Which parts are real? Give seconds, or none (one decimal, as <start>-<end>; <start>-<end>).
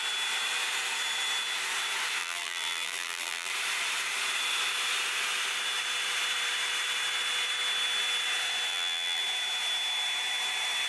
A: 0.0-2.2; 3.5-8.7; 9.2-10.9